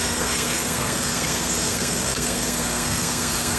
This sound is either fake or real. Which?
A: fake